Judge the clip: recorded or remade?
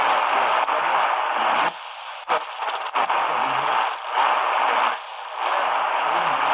recorded